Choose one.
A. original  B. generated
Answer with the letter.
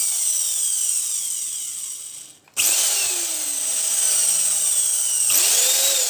A